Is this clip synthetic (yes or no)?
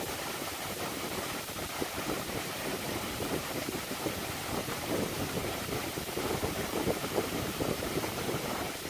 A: yes